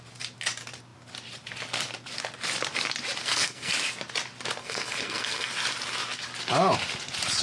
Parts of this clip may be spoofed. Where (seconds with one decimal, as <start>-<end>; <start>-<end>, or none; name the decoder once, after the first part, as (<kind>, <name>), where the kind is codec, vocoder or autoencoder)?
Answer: 3.2-3.7 (codec, SNAC); 4.6-5.5